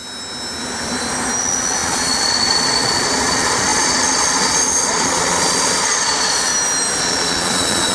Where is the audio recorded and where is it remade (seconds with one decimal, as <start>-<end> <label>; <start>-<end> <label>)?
0.0-1.4 recorded; 1.4-6.5 remade; 6.5-7.0 recorded; 7.0-7.9 remade